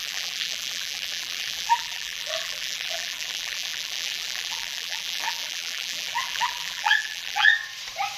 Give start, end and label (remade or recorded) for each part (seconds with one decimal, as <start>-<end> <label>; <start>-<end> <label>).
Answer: 0.0-7.5 remade; 7.5-8.2 recorded